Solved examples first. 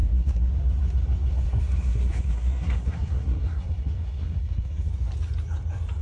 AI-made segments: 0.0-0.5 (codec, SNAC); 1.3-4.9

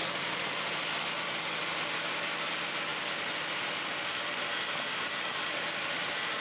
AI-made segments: none

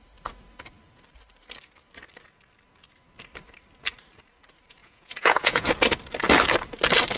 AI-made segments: 4.8-5.7 (vocoder, Vocos)

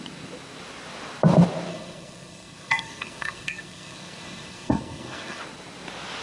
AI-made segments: 1.7-5.4 (codec, SNAC)

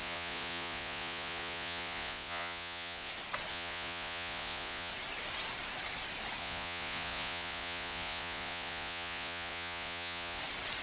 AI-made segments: 0.0-3.1 (vocoder, Vocos); 3.5-4.9; 6.4-10.4

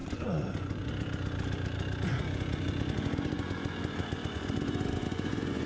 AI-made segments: 0.0-0.9 (vocoder, Vocos); 2.1-5.7